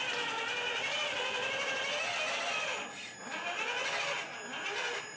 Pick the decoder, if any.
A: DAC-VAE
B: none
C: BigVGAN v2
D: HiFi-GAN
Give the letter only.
B